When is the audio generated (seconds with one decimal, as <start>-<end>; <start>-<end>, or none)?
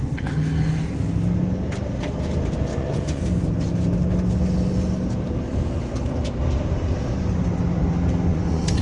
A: 2.7-3.2; 8.3-8.8